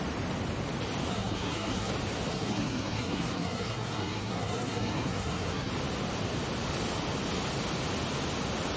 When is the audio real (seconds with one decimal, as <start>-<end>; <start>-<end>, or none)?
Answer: 0.0-1.1; 1.9-2.3; 5.7-8.8